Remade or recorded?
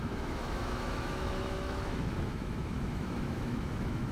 remade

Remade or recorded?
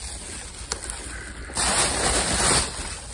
recorded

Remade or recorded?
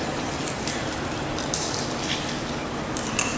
recorded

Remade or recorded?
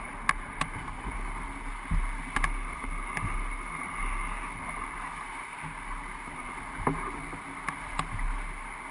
recorded